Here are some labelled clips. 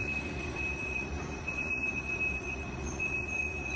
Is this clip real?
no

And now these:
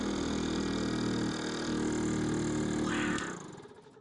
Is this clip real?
yes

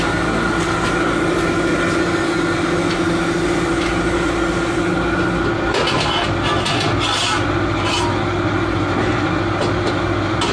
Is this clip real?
yes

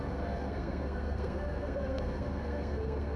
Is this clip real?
no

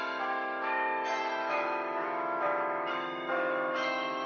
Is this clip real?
no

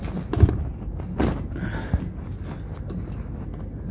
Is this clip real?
yes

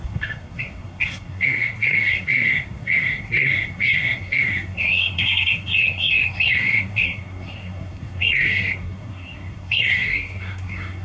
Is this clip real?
no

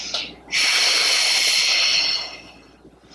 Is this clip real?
yes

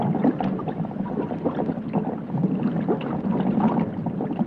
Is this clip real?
yes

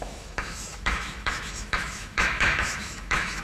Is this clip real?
no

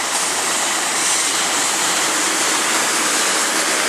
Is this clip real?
yes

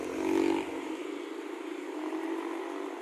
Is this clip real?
yes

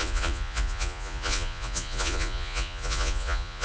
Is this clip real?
no